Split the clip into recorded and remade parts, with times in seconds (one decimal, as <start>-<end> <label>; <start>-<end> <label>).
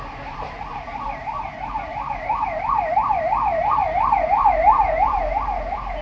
0.0-6.0 remade